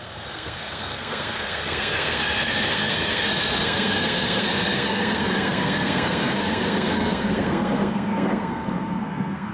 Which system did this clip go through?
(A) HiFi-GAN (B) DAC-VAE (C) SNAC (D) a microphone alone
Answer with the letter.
C